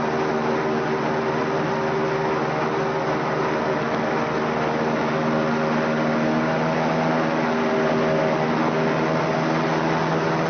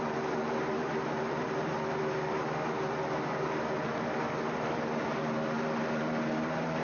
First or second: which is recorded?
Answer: first